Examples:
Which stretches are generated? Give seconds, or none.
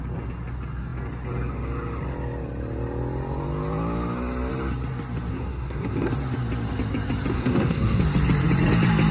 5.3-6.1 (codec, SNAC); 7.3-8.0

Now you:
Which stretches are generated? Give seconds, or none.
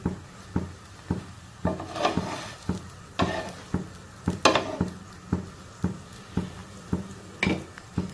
none